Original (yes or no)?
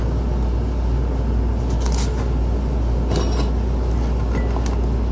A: yes